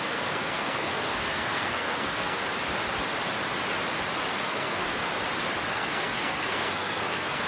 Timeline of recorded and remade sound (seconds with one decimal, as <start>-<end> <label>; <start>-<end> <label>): 0.0-2.4 remade; 2.4-4.3 recorded; 4.3-5.1 remade; 5.1-5.7 recorded; 5.7-7.5 remade